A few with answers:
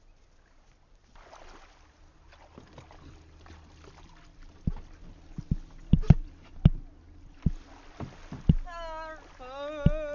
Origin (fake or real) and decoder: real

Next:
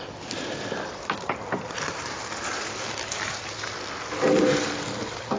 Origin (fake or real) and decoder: real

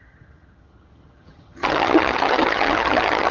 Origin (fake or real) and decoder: fake, vocoder, HiFi-GAN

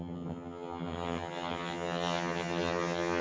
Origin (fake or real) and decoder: fake, vocoder, HiFi-GAN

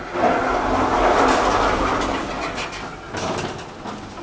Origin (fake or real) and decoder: real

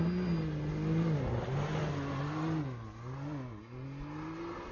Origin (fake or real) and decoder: real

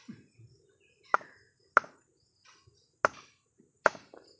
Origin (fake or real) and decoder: real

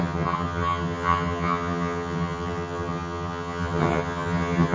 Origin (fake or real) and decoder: fake, vocoder, HiFi-GAN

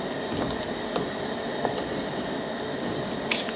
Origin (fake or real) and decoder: real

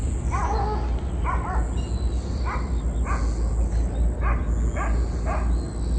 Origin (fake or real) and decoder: real